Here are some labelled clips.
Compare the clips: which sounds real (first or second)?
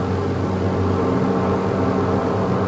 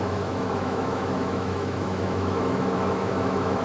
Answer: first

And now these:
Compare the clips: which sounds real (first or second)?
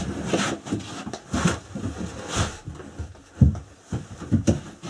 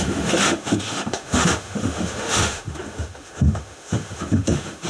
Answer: first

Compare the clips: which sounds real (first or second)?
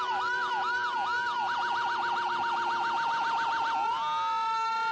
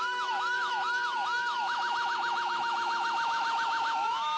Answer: first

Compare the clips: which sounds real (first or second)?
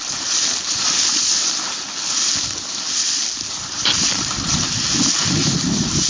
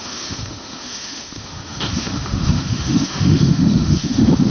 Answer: first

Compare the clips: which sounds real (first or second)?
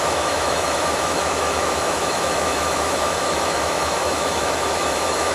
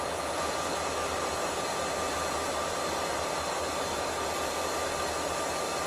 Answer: second